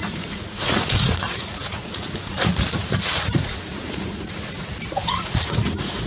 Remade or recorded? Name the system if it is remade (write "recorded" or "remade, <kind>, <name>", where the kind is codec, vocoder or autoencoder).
remade, vocoder, Vocos